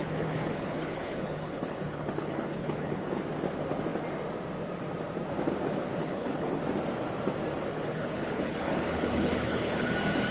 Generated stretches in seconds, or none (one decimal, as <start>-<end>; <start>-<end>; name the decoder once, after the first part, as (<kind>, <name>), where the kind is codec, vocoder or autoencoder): 0.0-3.2 (codec, HILCodec); 6.0-6.6; 7.7-9.9